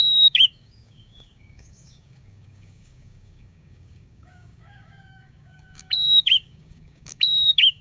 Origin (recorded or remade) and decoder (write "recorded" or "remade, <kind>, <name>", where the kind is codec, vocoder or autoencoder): remade, codec, DAC